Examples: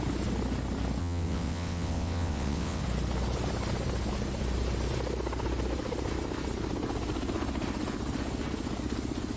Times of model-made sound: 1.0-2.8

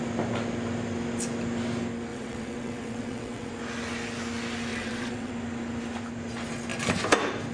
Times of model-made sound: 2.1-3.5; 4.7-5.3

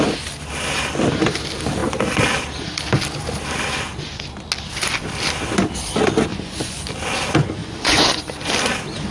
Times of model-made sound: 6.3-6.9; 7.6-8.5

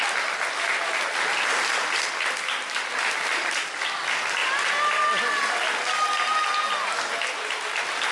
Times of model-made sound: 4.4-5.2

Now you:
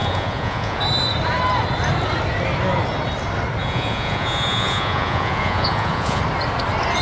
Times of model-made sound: 0.0-0.8; 3.6-6.2

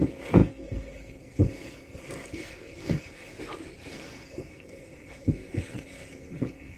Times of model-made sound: 0.0-3.3; 3.9-6.8

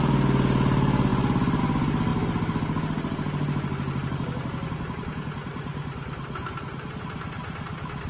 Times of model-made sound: none

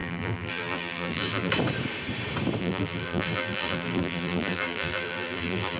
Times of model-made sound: 0.0-1.5; 2.6-5.8